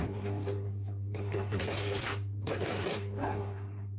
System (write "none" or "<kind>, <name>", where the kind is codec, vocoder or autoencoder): codec, SNAC